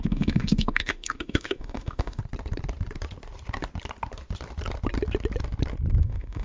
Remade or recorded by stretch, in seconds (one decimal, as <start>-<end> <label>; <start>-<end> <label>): 0.0-2.2 remade; 2.2-6.0 recorded; 6.0-6.4 remade